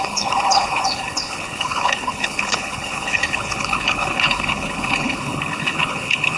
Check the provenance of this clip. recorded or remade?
remade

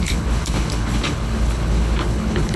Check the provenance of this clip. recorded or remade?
remade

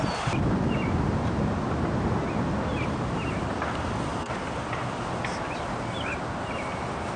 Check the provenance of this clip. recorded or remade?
recorded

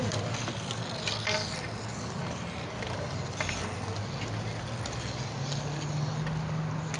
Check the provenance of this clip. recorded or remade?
recorded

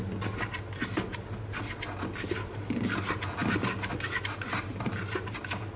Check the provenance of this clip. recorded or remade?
recorded